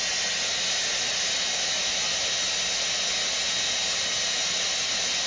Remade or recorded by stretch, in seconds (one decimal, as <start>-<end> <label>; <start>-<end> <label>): 0.0-5.3 recorded